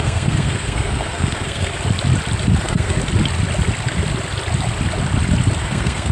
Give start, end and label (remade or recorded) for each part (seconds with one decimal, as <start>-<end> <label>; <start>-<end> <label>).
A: 0.0-1.7 remade; 1.7-2.6 recorded; 2.6-3.0 remade; 3.0-5.6 recorded; 5.6-6.1 remade